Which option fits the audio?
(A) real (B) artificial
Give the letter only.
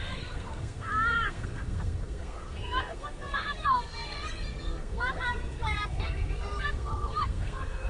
B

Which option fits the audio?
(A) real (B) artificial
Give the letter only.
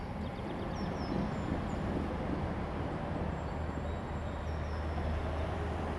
A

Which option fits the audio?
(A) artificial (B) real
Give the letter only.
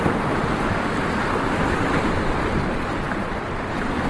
B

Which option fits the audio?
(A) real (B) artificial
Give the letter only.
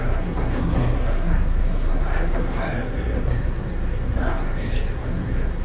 B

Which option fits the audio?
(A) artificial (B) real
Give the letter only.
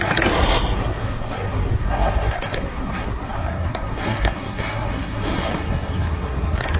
A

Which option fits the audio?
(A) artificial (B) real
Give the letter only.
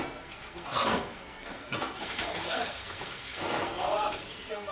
A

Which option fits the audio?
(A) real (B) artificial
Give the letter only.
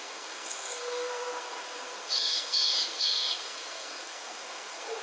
B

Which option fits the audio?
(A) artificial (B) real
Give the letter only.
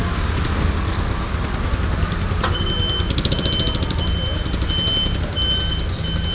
B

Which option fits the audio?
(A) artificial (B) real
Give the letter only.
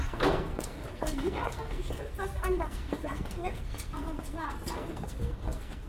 A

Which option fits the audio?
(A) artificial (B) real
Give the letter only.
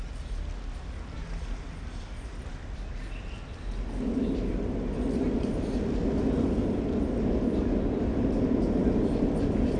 B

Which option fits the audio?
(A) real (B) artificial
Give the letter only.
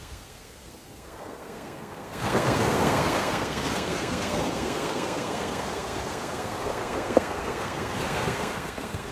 B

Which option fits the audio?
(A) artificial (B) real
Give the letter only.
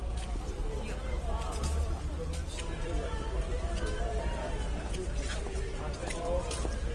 B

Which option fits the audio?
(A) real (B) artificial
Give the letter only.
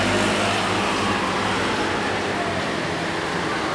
A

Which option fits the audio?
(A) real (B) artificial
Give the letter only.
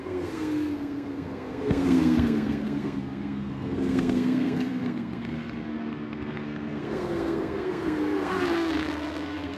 B